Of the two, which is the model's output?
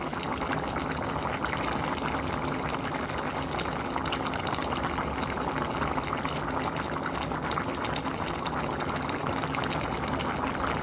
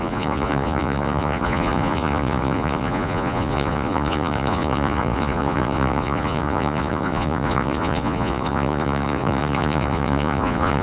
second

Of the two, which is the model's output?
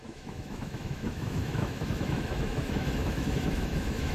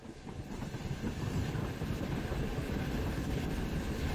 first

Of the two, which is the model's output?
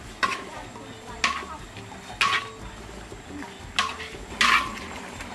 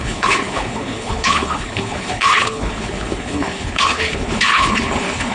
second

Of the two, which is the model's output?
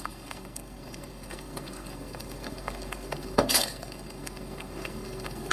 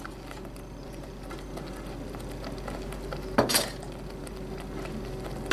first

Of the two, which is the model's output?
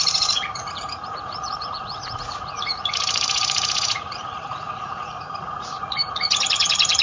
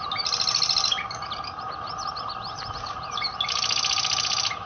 first